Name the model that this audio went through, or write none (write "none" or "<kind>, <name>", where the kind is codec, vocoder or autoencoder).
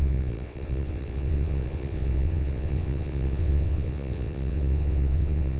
vocoder, WaveNeXt